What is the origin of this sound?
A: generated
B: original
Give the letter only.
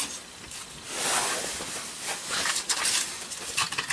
B